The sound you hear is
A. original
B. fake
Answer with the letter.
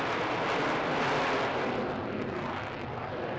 A